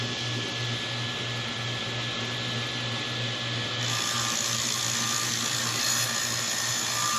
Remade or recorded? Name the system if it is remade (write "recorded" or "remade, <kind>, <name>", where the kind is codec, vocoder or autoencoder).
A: recorded